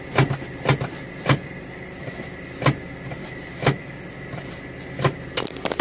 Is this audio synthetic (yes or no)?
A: no